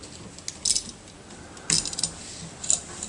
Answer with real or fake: real